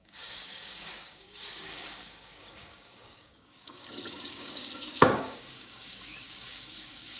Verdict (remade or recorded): remade